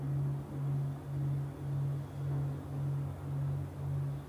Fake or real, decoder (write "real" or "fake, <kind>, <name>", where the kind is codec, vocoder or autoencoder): real